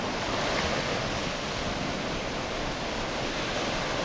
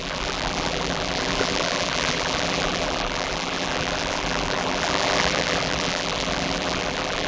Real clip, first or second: first